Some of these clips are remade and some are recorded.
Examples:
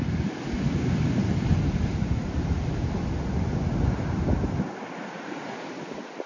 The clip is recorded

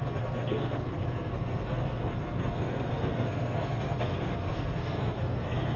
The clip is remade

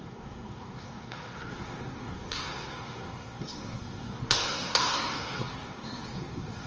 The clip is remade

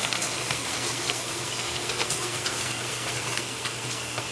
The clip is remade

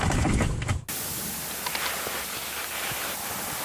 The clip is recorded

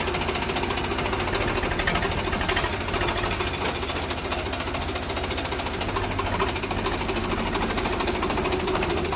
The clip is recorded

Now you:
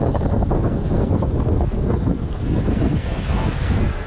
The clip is remade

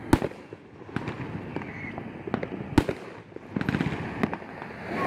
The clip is recorded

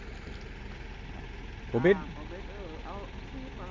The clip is recorded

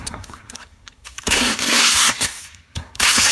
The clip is remade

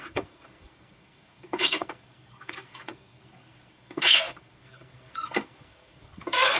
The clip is remade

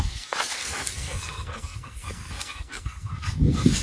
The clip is remade